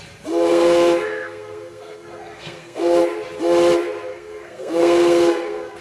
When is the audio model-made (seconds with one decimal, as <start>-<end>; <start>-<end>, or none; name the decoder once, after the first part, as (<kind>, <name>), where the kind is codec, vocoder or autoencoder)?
0.5-3.0 (codec, SNAC); 4.1-5.8